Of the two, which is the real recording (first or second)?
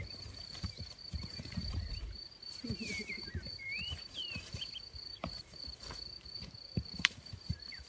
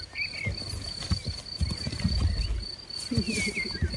second